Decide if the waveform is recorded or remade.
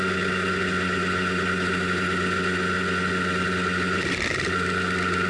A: recorded